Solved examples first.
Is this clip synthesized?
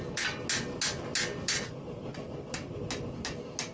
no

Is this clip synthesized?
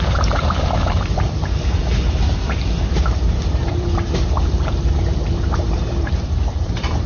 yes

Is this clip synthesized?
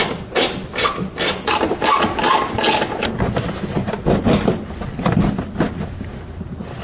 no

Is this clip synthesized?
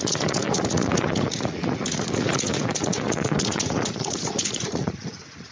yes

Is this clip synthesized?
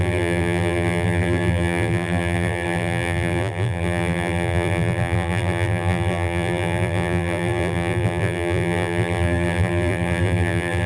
yes